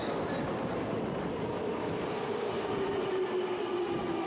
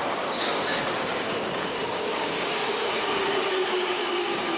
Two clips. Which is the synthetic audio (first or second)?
second